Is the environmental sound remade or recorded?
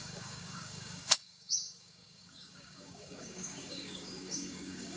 remade